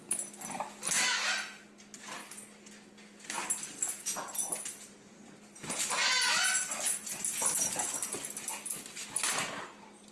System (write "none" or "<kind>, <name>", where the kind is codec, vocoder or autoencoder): none